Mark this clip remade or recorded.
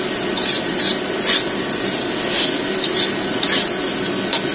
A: recorded